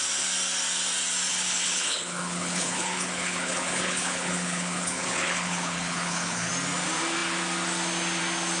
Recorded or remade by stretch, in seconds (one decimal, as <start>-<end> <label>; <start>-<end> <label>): 0.0-1.3 recorded; 1.3-6.5 remade; 6.5-8.6 recorded